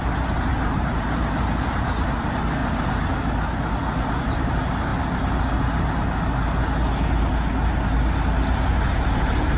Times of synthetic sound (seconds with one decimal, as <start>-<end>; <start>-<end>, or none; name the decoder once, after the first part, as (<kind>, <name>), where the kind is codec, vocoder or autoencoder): 0.0-2.6 (vocoder, BigVGAN v2); 4.1-4.9; 9.2-9.6